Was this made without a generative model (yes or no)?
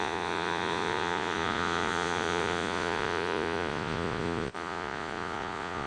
no